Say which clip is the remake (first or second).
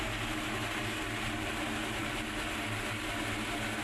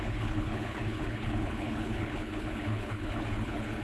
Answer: second